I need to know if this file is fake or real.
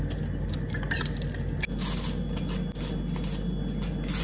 real